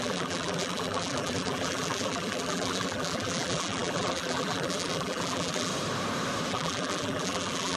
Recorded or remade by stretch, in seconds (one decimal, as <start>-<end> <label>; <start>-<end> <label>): 0.0-5.7 remade; 5.7-6.5 recorded; 6.5-7.8 remade